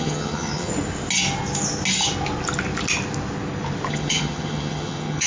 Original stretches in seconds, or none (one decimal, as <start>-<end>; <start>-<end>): 0.7-3.9